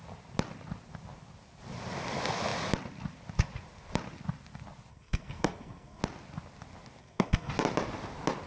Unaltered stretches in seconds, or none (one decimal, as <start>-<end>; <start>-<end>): 0.0-4.9; 6.0-7.0; 7.5-8.5